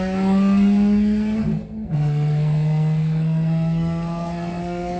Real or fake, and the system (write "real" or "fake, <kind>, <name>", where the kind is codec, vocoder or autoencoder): fake, codec, SNAC